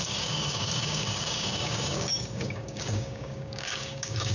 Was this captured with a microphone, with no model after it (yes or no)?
no